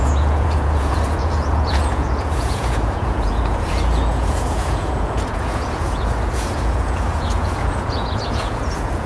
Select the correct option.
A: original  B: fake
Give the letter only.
B